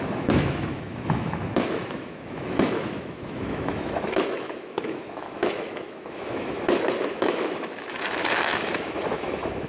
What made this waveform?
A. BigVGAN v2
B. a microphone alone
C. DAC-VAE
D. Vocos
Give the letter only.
C